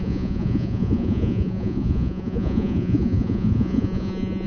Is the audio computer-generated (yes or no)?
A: yes